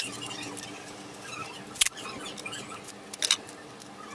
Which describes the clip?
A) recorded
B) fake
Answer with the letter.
A